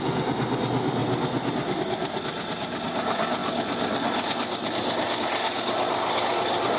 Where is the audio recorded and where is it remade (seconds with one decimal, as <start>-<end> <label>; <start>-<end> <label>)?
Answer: 0.0-6.8 recorded